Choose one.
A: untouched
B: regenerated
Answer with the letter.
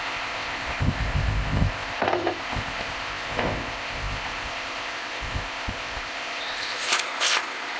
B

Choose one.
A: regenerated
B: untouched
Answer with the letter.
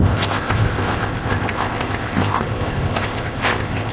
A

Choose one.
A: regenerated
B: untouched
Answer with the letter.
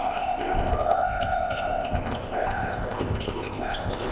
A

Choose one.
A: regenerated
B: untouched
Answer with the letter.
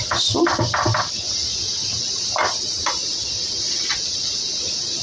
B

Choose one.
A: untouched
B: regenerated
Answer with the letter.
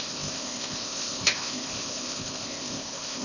B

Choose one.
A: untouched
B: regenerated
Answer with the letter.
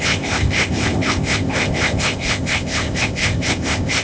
B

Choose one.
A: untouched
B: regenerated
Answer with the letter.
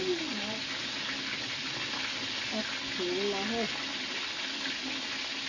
A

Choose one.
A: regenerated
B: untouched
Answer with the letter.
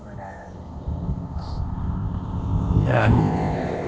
A